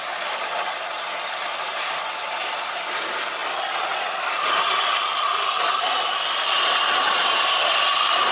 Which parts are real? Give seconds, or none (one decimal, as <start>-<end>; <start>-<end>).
0.0-8.3